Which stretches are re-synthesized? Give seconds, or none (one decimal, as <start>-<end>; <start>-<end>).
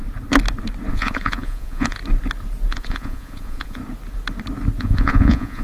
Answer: 0.9-2.0; 2.7-3.8; 4.8-5.6